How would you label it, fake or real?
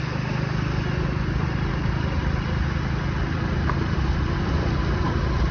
real